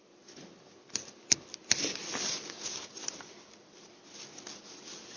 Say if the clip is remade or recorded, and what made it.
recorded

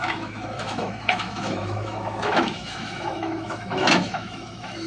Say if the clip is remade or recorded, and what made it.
remade, autoencoder, DAC-VAE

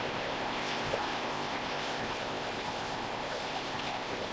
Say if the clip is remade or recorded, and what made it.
remade, codec, ZipCodec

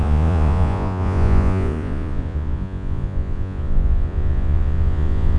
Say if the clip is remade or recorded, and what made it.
remade, vocoder, Vocos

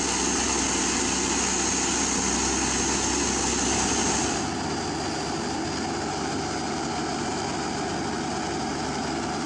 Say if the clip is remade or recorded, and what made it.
recorded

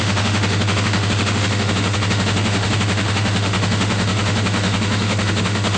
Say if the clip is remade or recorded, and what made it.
remade, autoencoder, DAC-VAE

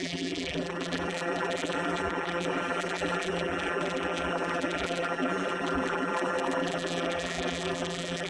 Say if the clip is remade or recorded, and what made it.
remade, vocoder, BigVGAN v2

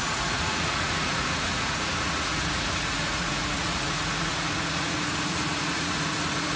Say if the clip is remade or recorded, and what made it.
remade, vocoder, Vocos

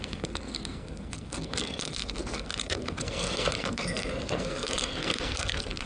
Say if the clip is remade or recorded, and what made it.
remade, codec, SNAC